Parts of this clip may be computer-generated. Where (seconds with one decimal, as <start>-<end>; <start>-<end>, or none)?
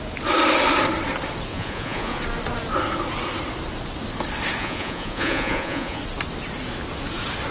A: 1.5-2.2; 4.6-6.0